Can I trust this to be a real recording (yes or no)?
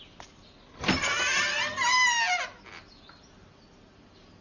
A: yes